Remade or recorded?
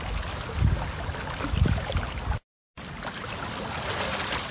recorded